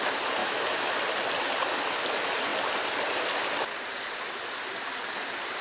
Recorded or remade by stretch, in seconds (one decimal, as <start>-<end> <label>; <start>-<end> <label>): 0.0-0.4 recorded; 0.4-0.9 remade; 0.9-5.6 recorded